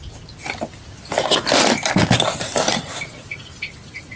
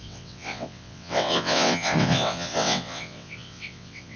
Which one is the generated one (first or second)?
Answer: second